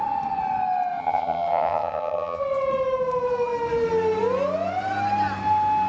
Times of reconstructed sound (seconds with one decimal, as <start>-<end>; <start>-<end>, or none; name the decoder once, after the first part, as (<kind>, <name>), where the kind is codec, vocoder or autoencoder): 1.0-2.4 (vocoder, HiFi-GAN)

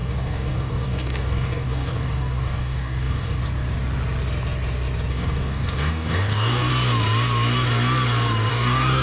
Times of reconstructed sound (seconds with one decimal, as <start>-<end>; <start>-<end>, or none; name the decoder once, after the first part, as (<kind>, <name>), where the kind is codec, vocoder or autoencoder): 0.0-3.4 (codec, DAC); 5.1-6.7; 8.5-9.0

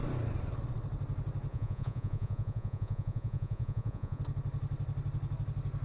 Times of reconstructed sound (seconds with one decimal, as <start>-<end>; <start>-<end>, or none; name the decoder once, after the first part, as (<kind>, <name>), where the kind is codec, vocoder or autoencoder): 1.5-4.2 (vocoder, Vocos)

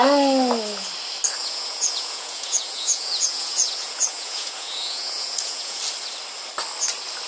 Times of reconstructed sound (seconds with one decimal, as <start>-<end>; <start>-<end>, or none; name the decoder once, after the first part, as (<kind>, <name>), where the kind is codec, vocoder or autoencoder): 1.4-5.8 (vocoder, Vocos)

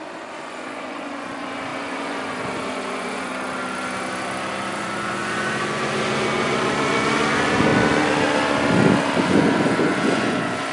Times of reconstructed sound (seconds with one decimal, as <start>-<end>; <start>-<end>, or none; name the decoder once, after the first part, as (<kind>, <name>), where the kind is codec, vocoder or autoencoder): 0.0-3.3 (vocoder, Vocos); 4.7-7.7; 9.2-10.7

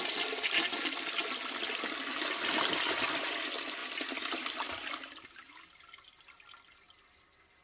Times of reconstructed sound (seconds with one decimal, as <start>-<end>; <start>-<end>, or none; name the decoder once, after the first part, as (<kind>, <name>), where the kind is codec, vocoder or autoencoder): none